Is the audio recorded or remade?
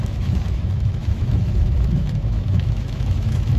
remade